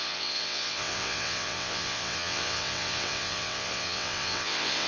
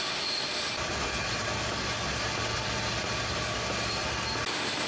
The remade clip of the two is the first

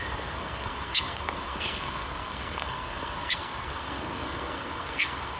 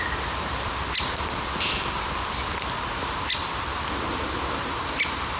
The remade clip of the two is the first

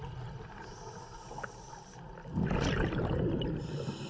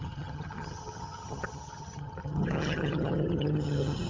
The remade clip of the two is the second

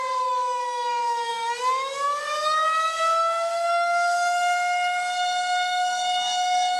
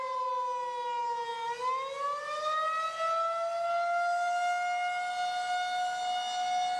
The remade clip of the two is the first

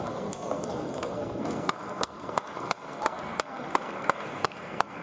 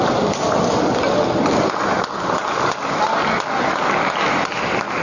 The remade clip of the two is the first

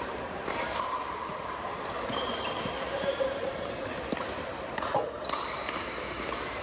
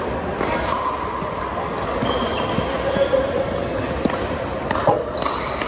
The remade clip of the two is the first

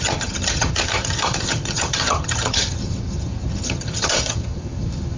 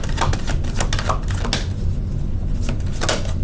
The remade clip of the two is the first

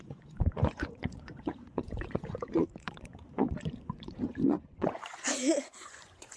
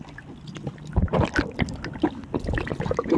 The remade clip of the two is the first